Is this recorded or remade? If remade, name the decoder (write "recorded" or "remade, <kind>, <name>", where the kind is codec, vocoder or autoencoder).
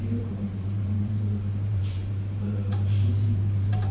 remade, vocoder, BigVGAN v2